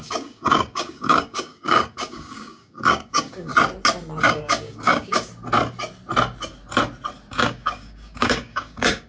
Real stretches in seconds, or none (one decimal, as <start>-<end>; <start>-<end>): 3.5-4.2; 5.3-7.3